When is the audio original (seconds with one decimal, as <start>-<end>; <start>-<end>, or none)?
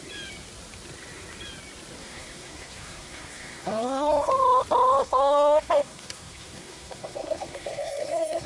0.0-2.0; 4.3-5.0